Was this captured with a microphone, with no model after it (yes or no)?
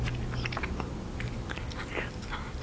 yes